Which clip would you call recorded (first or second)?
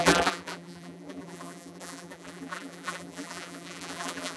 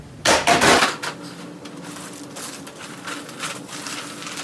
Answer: second